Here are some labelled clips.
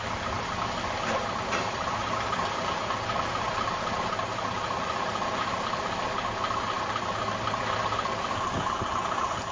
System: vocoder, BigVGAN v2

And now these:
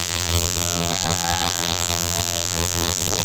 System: vocoder, BigVGAN v2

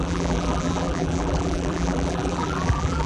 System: vocoder, BigVGAN v2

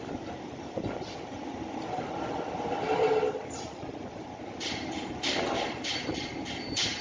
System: vocoder, BigVGAN v2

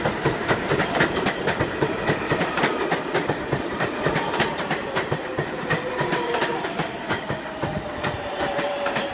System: vocoder, BigVGAN v2